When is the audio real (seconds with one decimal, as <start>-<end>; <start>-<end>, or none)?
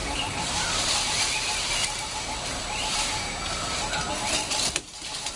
2.6-4.9